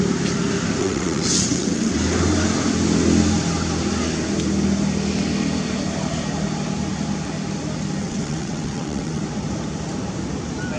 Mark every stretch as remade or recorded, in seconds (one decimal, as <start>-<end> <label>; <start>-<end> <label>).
0.0-0.8 recorded; 0.8-1.9 remade; 1.9-8.0 recorded; 8.0-9.2 remade; 9.2-10.8 recorded